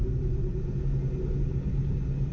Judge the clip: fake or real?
real